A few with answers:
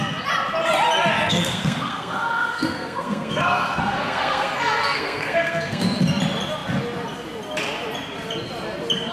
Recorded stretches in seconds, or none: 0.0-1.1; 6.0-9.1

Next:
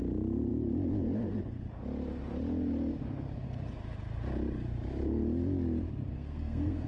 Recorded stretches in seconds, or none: 0.0-6.1

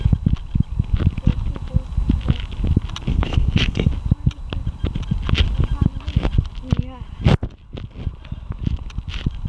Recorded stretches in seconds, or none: 0.0-3.1; 3.9-9.5

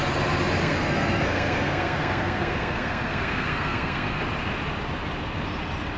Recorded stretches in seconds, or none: 0.0-0.6; 4.2-6.0

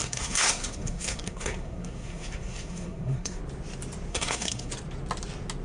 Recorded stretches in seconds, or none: 3.4-4.1; 4.7-5.6

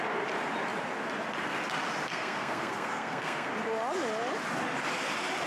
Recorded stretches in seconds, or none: 0.0-2.1; 3.5-5.5

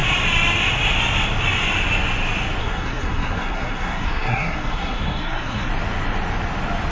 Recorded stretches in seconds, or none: 0.0-2.6; 5.7-6.9